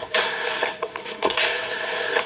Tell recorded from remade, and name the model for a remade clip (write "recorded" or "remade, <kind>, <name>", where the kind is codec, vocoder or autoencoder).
remade, codec, SNAC